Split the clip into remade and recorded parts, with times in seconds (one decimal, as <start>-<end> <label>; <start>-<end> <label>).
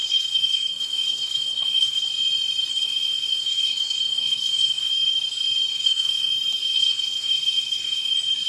0.0-2.1 remade; 2.1-2.7 recorded; 2.7-4.9 remade; 4.9-5.7 recorded; 5.7-6.3 remade; 6.3-6.7 recorded; 6.7-8.1 remade; 8.1-8.5 recorded